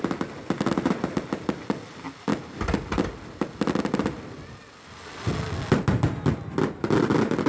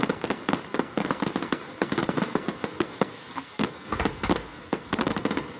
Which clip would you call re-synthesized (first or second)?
second